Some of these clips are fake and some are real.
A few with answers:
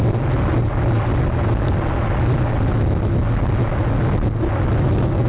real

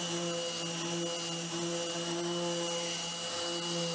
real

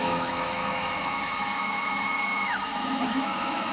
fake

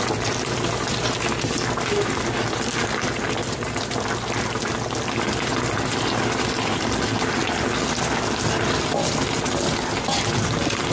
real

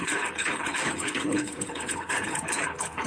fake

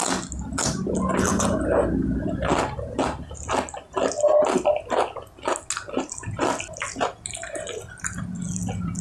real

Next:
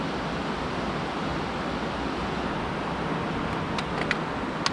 real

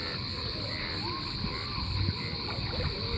real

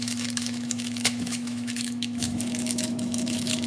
fake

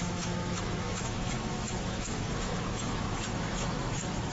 fake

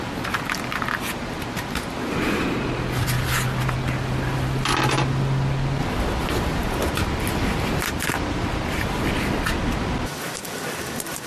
real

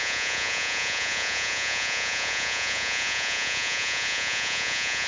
fake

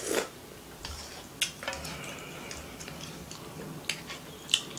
real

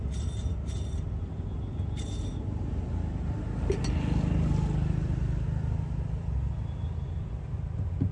real